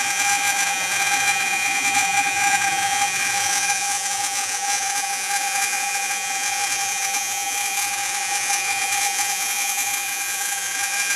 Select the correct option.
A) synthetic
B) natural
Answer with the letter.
A